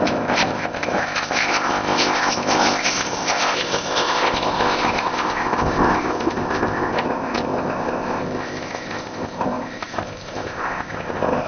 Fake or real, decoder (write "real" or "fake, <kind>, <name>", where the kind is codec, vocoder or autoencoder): fake, codec, ZipCodec